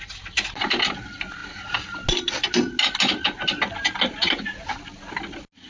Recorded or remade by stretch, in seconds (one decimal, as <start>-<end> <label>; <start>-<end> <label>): 0.0-5.7 recorded